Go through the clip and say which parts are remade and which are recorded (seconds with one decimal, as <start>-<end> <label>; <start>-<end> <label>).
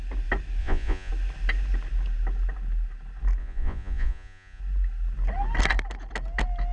0.0-0.6 recorded; 0.6-1.1 remade; 1.1-3.4 recorded; 3.4-4.6 remade; 4.6-6.7 recorded